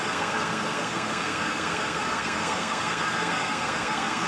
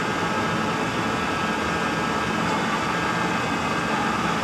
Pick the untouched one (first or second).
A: second